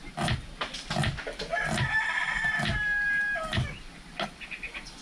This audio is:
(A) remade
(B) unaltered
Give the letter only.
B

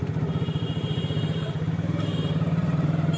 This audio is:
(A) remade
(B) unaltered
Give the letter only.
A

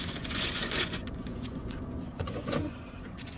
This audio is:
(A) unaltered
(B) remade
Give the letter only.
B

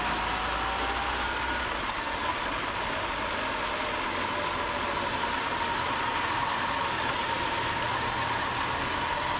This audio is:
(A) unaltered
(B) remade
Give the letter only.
A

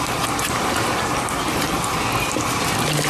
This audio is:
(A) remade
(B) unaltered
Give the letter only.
B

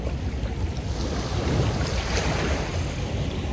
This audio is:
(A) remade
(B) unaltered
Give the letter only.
B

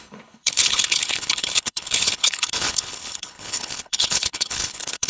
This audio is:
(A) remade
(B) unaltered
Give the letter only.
A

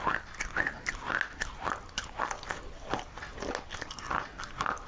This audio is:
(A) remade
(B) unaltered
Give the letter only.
B